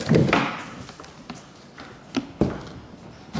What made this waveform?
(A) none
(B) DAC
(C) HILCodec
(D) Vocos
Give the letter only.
A